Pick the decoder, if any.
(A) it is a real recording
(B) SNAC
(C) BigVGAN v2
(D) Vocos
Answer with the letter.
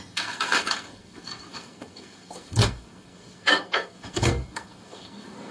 B